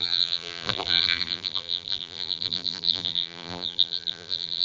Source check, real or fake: fake